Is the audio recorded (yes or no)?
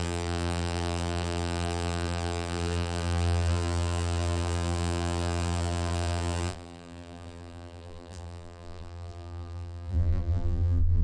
no